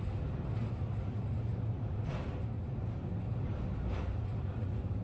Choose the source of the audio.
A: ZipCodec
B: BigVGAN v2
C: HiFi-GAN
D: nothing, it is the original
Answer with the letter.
D